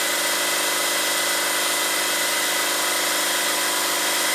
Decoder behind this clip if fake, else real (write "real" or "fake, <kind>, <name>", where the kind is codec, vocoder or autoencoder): real